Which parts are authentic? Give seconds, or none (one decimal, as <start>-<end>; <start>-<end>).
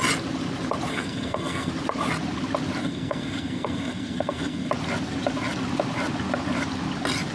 0.0-0.9; 1.7-2.8; 4.7-7.3